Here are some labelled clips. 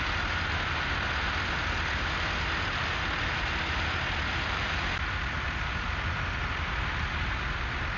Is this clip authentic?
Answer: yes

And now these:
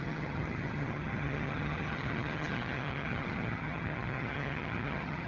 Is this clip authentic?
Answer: no